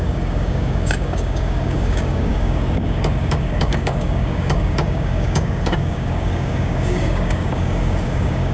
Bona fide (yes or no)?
no